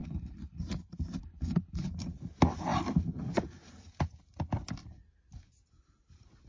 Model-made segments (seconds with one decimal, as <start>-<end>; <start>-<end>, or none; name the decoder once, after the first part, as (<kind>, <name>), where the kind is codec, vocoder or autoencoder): 0.0-0.6 (codec, HILCodec); 1.2-1.9